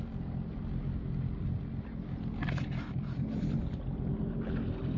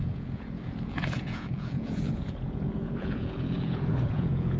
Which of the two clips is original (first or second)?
first